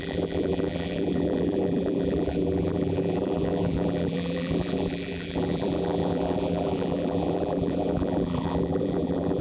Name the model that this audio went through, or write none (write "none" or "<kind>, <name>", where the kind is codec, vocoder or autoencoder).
vocoder, BigVGAN v2